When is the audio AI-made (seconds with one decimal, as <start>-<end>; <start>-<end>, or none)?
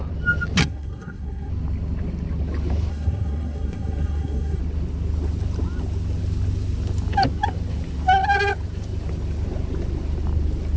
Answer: 0.6-1.5; 2.9-4.6